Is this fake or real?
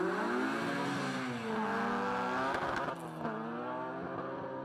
real